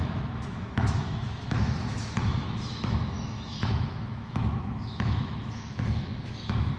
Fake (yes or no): yes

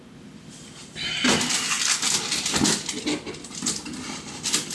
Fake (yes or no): no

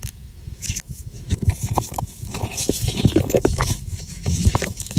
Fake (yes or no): yes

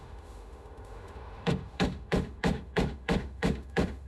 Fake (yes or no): yes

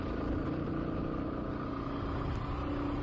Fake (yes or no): no